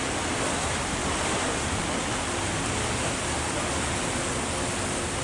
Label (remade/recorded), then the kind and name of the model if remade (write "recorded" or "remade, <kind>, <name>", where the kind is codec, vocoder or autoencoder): recorded